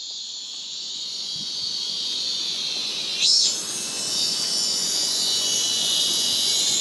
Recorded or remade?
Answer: remade